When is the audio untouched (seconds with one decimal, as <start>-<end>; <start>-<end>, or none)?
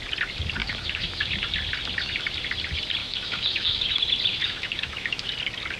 0.0-0.6; 1.3-3.0; 4.0-4.4; 5.3-5.8